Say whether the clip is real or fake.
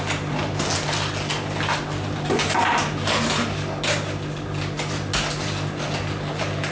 real